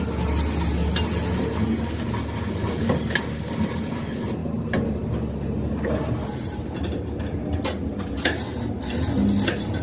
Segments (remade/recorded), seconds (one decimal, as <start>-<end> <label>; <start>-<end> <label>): 0.0-9.8 recorded